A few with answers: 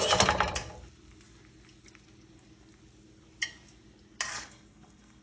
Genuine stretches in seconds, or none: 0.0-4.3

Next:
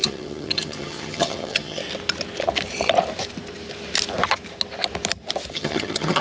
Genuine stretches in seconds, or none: 1.8-5.5

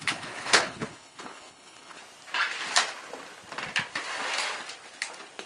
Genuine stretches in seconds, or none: 2.0-5.5

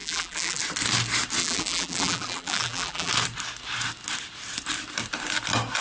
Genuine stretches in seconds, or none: 0.6-1.4; 3.1-5.8

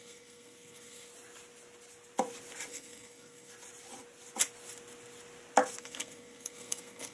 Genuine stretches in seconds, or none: 1.1-2.7; 3.5-5.8

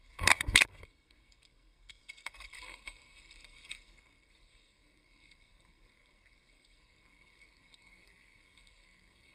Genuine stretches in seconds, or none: none

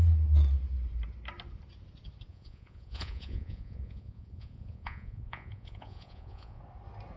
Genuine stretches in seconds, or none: 0.0-2.3; 6.6-7.2

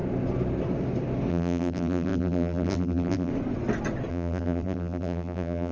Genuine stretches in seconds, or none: 0.0-1.3; 3.3-4.1